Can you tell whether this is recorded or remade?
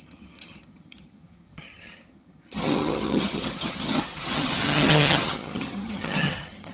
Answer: remade